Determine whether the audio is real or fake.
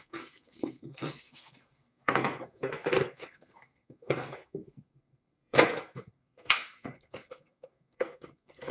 fake